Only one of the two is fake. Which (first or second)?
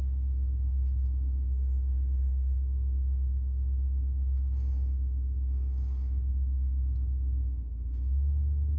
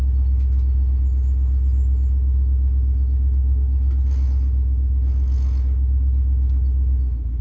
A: first